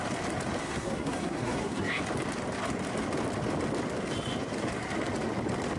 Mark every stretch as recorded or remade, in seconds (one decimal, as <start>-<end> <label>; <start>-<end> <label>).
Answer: 0.0-0.6 recorded; 0.6-2.0 remade; 2.0-5.8 recorded